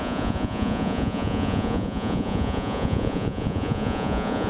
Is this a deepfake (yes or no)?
yes